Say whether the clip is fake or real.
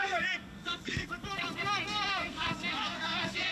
fake